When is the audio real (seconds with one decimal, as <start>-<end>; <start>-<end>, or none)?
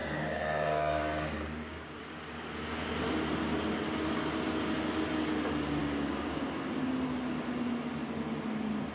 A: 2.0-5.8; 6.4-8.9